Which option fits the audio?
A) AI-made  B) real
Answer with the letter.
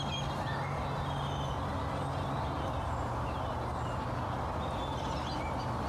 B